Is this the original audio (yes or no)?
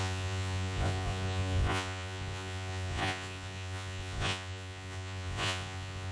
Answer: no